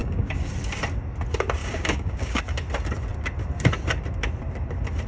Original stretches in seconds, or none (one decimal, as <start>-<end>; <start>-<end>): 0.5-1.6; 2.4-5.1